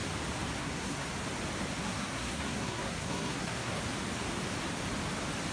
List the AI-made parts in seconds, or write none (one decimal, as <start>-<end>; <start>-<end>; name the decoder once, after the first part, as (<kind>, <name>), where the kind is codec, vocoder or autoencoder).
0.6-1.1 (codec, SNAC); 1.8-3.8